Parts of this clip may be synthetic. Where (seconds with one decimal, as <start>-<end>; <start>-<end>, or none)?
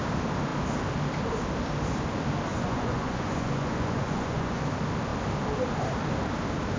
2.5-4.6